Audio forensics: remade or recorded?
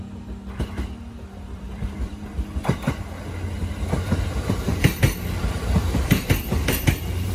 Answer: remade